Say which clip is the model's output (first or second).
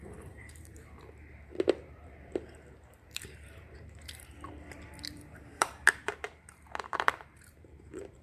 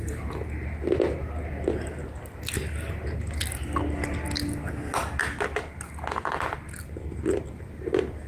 first